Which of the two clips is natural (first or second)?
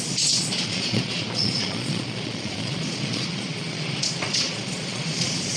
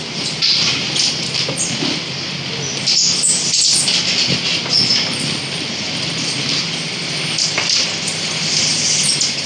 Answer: second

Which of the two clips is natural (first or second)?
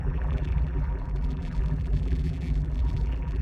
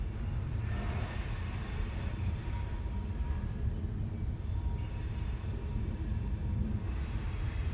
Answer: second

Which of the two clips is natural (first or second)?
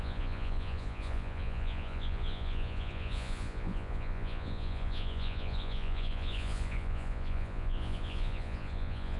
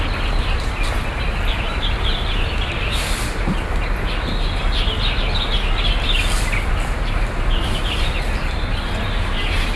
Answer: second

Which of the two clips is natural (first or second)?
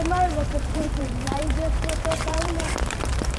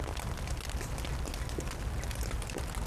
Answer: second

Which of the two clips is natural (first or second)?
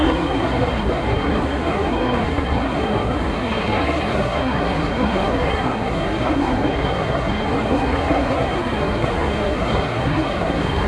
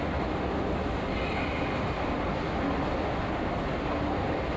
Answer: second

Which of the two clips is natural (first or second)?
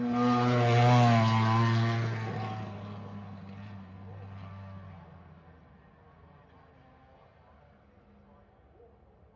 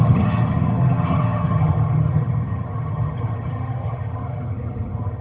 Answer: first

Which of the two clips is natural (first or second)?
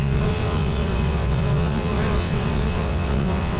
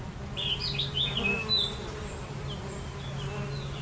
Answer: second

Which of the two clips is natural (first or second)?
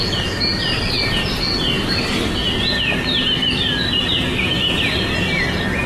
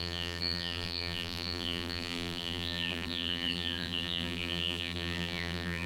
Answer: first